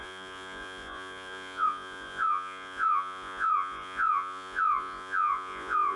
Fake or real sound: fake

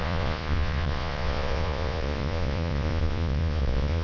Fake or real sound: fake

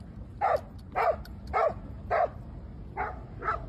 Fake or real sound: real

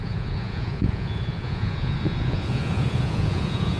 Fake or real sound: fake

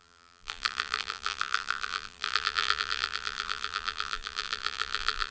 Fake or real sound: fake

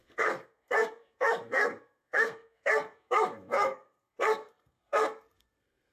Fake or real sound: fake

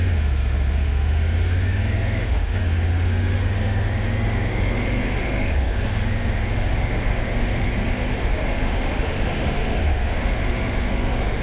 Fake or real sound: fake